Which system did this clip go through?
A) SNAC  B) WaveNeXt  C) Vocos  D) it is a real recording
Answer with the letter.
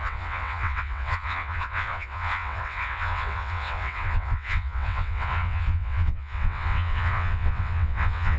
B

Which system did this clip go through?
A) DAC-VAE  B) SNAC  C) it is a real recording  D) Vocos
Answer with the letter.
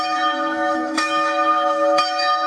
A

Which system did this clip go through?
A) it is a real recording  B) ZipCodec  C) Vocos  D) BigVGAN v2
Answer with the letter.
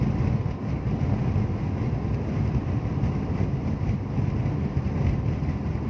A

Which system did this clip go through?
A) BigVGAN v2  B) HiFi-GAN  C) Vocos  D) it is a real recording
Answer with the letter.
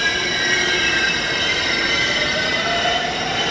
A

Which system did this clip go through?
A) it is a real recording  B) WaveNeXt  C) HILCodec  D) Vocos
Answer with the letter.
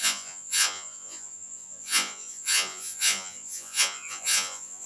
D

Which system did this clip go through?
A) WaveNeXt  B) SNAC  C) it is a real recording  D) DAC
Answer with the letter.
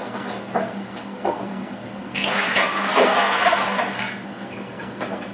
B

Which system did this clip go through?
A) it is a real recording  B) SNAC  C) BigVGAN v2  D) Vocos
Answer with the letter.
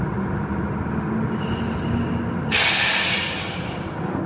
A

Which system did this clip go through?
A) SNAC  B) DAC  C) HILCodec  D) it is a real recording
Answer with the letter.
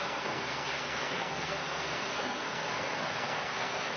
A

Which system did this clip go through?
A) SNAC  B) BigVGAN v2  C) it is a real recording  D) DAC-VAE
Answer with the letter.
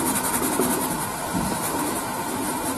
B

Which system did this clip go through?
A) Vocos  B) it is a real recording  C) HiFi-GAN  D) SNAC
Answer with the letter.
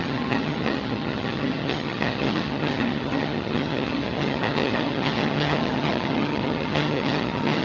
C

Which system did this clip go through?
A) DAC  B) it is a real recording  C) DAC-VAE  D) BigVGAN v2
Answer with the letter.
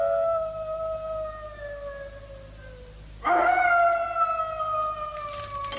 B